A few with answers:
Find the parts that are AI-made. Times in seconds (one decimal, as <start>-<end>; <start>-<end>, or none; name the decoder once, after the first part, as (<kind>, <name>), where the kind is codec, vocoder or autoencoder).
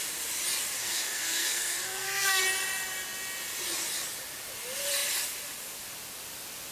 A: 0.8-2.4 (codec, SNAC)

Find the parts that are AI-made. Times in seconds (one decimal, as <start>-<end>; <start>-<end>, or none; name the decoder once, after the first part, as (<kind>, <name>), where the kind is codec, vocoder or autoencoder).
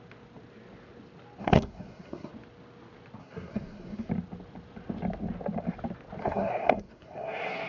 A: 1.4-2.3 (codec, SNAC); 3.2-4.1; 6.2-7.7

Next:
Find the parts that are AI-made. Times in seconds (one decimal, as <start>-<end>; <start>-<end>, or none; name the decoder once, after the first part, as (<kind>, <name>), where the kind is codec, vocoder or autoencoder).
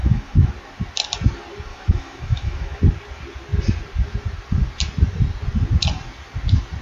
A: 0.0-0.5 (autoencoder, DAC-VAE); 1.7-2.8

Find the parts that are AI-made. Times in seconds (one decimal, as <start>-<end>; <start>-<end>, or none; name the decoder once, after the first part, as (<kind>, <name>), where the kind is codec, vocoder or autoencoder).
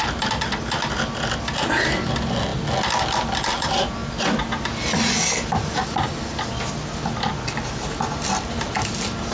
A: none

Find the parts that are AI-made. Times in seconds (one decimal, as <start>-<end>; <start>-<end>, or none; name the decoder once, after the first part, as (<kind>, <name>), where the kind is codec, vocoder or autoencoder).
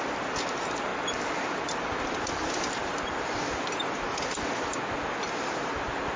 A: none